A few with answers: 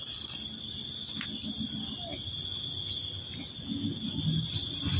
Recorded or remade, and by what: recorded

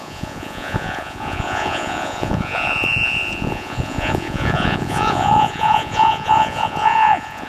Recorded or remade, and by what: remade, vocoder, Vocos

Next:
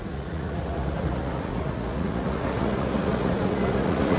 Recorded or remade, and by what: remade, vocoder, Vocos